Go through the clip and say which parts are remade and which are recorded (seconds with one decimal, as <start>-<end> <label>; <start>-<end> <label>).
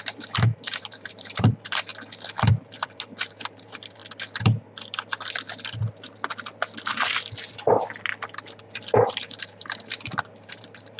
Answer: 0.0-1.9 remade; 1.9-2.5 recorded; 2.5-4.0 remade; 4.0-9.1 recorded; 9.1-11.0 remade